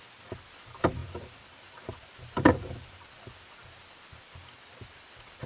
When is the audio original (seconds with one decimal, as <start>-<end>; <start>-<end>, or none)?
0.0-1.0; 3.1-5.5